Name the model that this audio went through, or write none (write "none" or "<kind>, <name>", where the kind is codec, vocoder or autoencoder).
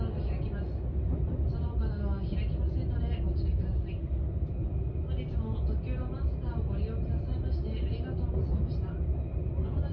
none